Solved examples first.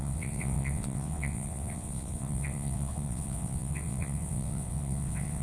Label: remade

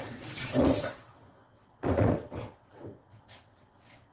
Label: remade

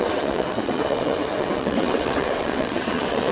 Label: remade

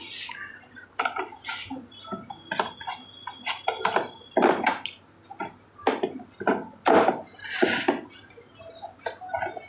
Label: recorded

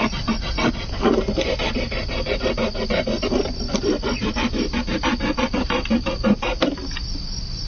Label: recorded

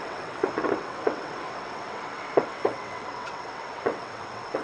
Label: remade